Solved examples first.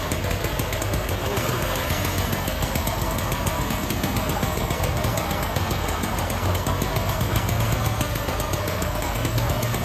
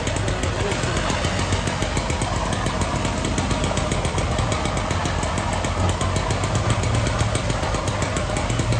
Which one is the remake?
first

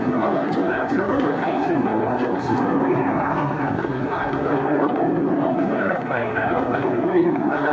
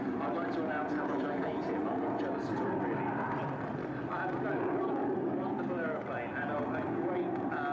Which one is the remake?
first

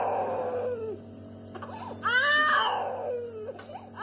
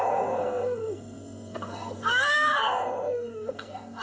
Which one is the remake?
second